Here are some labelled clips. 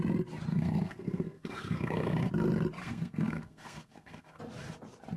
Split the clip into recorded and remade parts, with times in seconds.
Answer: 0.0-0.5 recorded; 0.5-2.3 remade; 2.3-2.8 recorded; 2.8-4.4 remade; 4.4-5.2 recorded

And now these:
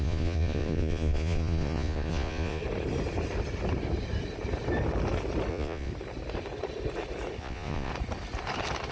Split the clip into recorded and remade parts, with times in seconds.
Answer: 0.0-2.6 remade; 2.6-5.5 recorded; 5.5-5.9 remade; 5.9-7.4 recorded; 7.4-7.9 remade; 7.9-8.9 recorded

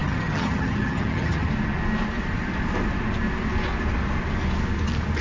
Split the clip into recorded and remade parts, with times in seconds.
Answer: 0.0-1.5 remade; 1.5-5.2 recorded